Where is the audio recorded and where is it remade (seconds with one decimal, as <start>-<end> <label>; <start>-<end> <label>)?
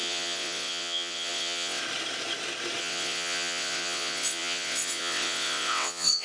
0.0-1.8 remade; 1.8-2.8 recorded; 2.8-6.2 remade